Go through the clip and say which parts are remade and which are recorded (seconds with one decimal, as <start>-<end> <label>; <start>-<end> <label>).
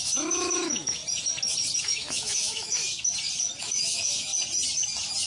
0.0-1.0 remade; 1.0-1.8 recorded; 1.8-2.8 remade; 2.8-3.6 recorded; 3.6-4.3 remade; 4.3-5.3 recorded